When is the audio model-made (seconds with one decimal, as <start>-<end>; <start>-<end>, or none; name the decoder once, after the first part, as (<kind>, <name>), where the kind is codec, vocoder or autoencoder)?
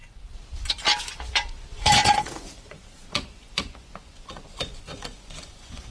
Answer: 1.0-5.9 (vocoder, Vocos)